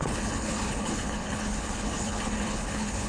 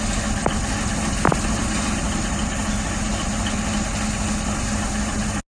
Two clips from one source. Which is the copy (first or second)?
first